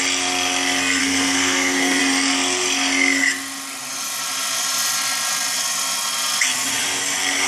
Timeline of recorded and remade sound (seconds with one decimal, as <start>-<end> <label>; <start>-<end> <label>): 0.0-1.0 recorded; 1.0-2.0 remade; 2.0-7.5 recorded